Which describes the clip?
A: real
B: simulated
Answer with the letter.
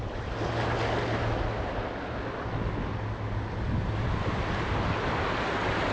A